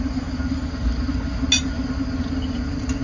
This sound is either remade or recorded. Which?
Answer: recorded